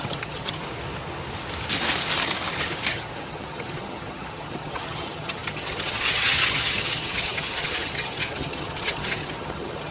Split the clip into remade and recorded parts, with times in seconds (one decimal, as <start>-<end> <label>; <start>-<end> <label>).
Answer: 0.0-0.6 remade; 0.6-2.9 recorded; 2.9-9.9 remade